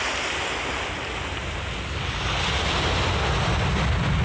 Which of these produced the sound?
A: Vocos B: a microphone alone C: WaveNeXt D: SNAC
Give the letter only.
B